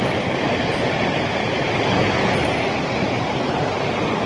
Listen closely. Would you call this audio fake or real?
real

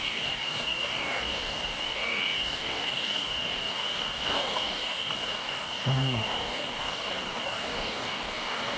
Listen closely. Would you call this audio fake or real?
fake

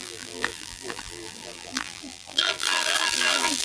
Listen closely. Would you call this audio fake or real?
fake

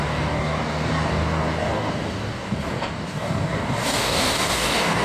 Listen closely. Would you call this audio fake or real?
fake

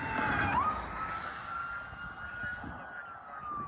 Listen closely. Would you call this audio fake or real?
real